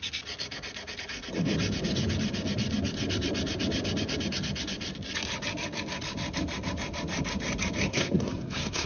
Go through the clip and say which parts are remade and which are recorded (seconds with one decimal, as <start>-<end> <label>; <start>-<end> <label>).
0.0-7.9 recorded; 7.9-8.9 remade